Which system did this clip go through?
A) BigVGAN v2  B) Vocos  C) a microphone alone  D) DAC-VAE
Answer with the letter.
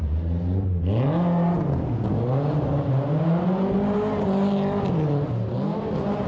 C